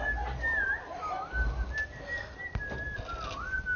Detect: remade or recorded recorded